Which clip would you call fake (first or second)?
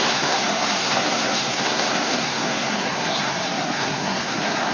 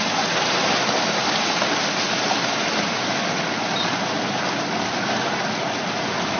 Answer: first